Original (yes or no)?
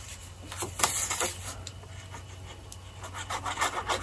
yes